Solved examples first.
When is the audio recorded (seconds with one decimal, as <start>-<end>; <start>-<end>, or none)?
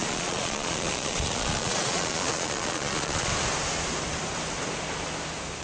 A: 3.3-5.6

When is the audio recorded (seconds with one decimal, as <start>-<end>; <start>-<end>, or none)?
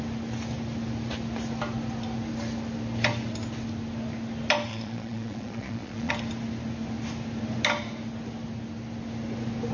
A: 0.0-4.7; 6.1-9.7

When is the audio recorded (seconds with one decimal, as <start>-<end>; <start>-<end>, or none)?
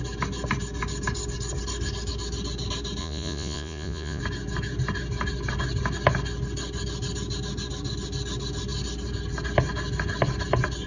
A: 0.0-3.0; 4.2-10.9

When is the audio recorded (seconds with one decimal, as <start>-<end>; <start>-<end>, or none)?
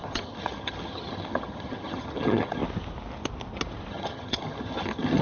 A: 2.6-3.9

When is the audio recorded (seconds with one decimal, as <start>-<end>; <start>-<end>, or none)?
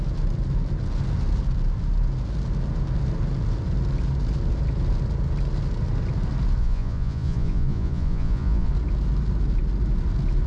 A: 0.0-6.6; 8.7-10.5